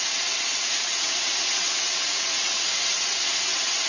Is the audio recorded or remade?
remade